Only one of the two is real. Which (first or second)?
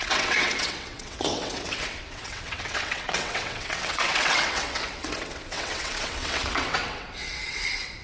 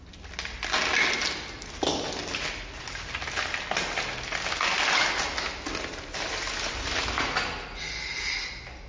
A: second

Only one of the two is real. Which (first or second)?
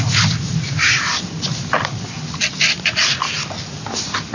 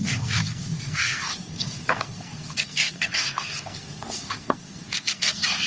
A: first